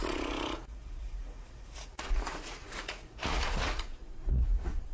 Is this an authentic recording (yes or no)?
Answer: no